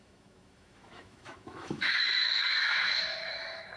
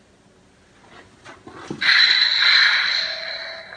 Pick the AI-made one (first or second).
first